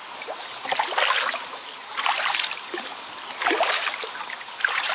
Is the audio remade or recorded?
recorded